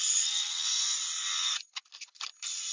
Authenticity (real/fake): real